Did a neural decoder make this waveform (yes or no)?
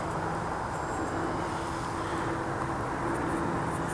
no